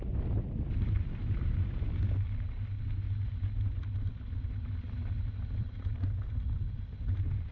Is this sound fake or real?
real